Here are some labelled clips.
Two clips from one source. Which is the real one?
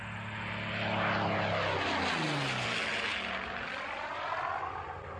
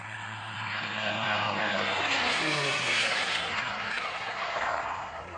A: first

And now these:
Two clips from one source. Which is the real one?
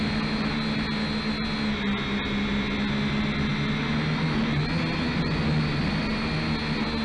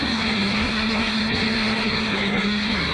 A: first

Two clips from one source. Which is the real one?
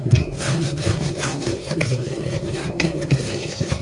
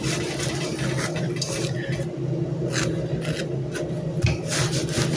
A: second